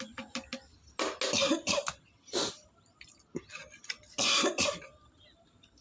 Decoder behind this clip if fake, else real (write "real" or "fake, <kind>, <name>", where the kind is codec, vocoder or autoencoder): real